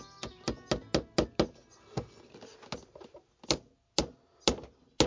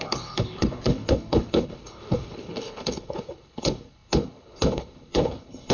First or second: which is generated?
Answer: second